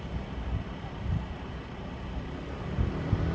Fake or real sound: real